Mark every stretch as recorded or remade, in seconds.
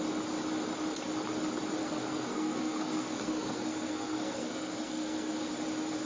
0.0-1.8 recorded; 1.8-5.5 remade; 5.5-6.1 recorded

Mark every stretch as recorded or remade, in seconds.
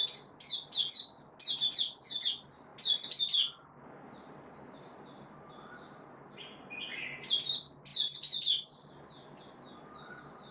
0.0-10.5 recorded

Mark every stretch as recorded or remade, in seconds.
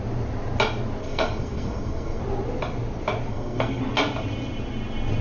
0.0-1.0 recorded; 1.0-2.2 remade; 2.2-3.3 recorded; 3.3-3.8 remade; 3.8-5.2 recorded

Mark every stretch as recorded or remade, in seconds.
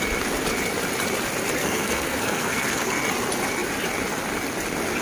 0.0-1.6 recorded; 1.6-2.9 remade; 2.9-5.0 recorded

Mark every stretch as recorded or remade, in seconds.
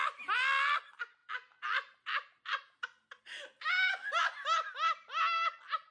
0.0-5.9 recorded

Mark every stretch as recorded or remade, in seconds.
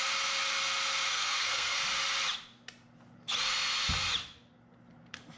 0.0-1.1 recorded; 1.1-1.8 remade; 1.8-5.4 recorded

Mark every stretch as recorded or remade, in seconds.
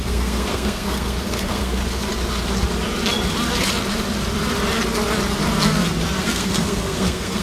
0.0-1.8 remade; 1.8-6.2 recorded; 6.2-7.4 remade